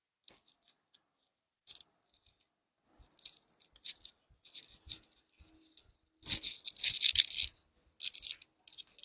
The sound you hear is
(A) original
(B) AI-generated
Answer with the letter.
A